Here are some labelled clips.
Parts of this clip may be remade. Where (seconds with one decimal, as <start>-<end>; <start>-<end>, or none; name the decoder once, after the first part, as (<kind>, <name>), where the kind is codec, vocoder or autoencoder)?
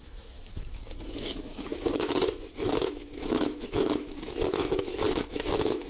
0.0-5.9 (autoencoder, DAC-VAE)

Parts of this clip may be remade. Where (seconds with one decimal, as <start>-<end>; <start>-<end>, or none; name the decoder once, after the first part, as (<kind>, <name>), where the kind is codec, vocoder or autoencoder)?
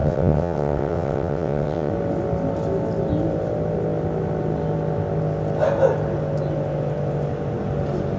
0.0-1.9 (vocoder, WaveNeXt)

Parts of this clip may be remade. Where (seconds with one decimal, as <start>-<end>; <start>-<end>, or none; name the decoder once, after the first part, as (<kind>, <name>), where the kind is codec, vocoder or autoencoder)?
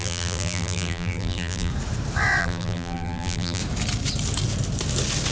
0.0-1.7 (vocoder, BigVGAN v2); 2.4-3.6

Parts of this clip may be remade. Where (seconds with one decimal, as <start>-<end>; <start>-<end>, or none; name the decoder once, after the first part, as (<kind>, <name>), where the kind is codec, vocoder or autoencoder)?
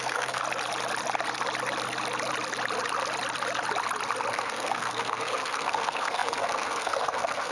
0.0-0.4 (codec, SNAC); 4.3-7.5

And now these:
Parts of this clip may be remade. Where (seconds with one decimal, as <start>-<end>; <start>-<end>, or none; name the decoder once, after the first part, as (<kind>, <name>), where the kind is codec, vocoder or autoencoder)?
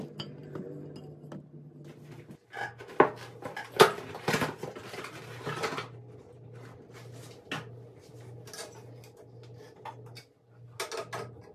none